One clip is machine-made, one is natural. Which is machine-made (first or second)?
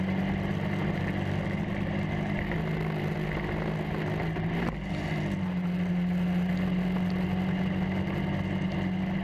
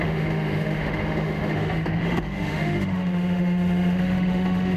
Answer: second